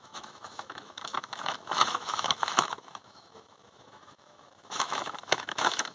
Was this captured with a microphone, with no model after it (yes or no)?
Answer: no